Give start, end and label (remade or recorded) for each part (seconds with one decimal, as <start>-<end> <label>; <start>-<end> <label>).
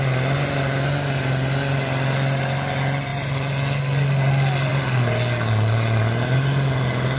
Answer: 0.0-7.2 recorded